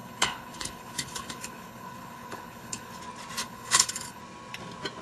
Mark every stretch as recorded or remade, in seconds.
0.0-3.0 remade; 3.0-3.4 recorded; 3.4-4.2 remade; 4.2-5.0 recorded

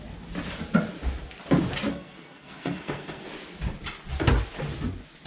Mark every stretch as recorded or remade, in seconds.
0.0-1.9 recorded; 1.9-3.2 remade; 3.2-5.3 recorded

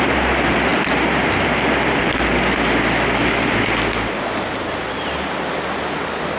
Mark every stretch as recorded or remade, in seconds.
0.0-6.4 recorded

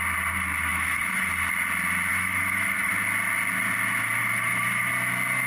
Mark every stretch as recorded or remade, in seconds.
0.0-0.7 recorded; 0.7-1.3 remade; 1.3-2.1 recorded; 2.1-2.9 remade; 2.9-4.2 recorded; 4.2-4.9 remade; 4.9-5.5 recorded

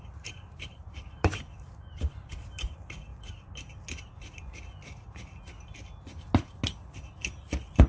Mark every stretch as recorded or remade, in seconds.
0.0-3.1 remade; 3.1-7.9 recorded

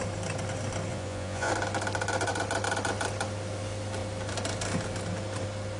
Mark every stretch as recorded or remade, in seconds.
0.0-0.9 recorded; 0.9-1.5 remade; 1.5-5.8 recorded

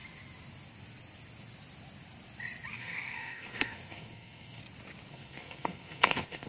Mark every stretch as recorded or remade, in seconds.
0.0-2.7 recorded; 2.7-4.6 remade; 4.6-5.1 recorded; 5.1-6.5 remade